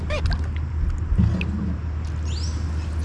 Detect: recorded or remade recorded